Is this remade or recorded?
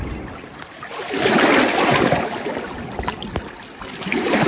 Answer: recorded